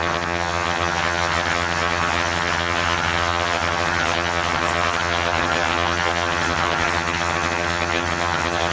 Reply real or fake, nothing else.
fake